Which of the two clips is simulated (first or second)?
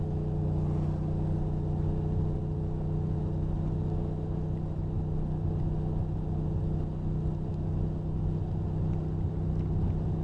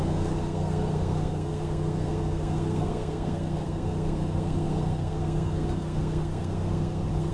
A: second